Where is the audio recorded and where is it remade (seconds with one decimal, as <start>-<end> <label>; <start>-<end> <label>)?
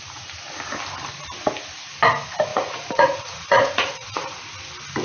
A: 0.0-2.5 recorded; 2.5-4.4 remade; 4.4-5.0 recorded